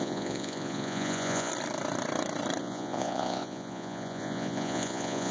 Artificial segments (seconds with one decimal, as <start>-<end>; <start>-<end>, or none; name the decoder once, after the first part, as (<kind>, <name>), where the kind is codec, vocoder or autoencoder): 0.0-1.5 (vocoder, Vocos); 2.6-5.3